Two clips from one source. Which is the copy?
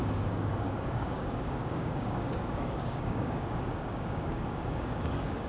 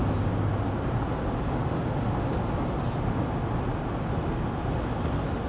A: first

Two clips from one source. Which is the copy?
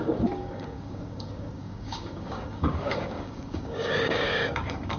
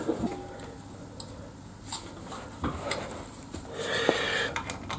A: first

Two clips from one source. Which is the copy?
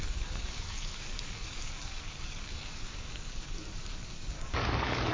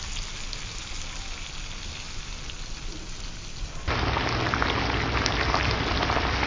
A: first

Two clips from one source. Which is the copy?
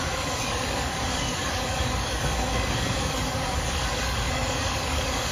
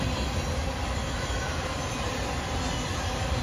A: first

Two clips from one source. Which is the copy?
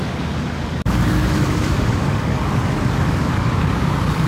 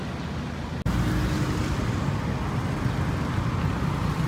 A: first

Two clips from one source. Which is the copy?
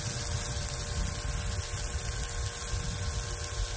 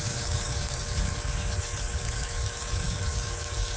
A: second